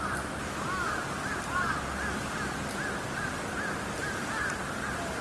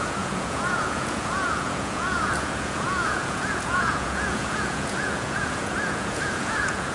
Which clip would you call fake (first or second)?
second